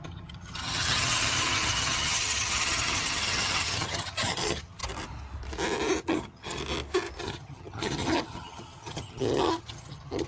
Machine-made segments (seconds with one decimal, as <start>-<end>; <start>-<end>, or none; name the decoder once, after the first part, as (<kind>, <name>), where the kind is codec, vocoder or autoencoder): 0.0-4.8 (vocoder, HiFi-GAN); 6.0-6.6; 7.2-10.3